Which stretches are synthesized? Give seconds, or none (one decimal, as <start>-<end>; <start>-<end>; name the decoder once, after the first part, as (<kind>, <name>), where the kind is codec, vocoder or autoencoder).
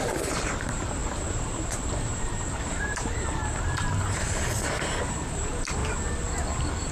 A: 0.0-5.8 (vocoder, BigVGAN v2)